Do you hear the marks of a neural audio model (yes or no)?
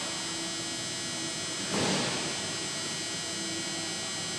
no